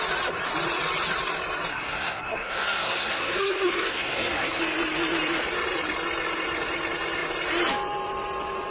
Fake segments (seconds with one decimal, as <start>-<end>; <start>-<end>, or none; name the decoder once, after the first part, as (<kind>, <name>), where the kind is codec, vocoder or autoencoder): 1.7-4.6 (codec, SNAC)